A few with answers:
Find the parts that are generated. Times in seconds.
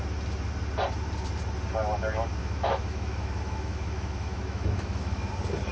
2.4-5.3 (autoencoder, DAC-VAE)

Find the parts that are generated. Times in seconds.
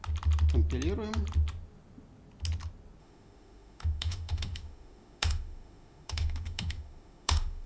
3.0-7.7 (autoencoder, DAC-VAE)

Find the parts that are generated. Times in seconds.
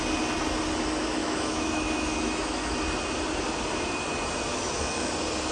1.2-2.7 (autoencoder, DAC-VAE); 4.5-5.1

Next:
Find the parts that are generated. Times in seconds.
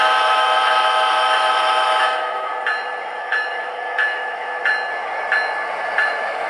0.0-2.5 (autoencoder, DAC-VAE); 3.2-4.6; 6.1-6.5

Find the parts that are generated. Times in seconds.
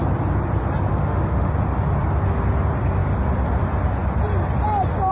0.9-1.5 (autoencoder, DAC-VAE)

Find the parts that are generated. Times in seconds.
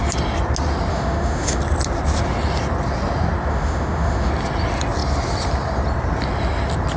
0.9-1.6 (autoencoder, DAC-VAE); 3.5-4.3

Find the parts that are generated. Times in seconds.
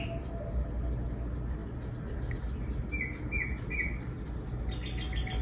none